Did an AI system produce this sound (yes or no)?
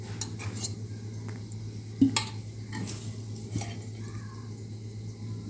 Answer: no